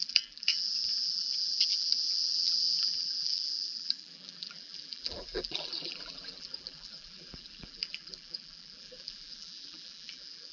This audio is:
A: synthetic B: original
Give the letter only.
A